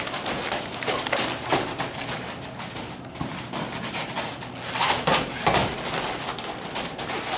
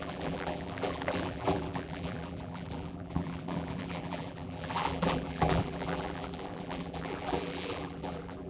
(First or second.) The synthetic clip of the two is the second